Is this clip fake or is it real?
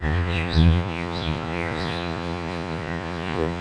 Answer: fake